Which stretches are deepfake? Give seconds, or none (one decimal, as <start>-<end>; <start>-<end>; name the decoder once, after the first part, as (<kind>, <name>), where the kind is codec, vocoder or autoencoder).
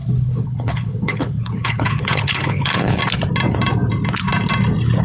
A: 0.0-3.0 (codec, HILCodec)